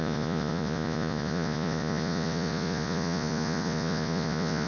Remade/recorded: remade